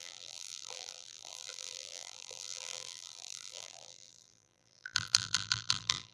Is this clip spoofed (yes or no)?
yes